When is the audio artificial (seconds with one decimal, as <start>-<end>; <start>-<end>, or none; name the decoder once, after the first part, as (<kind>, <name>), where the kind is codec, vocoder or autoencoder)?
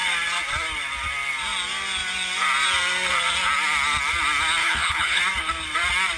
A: 4.6-5.2 (codec, HILCodec)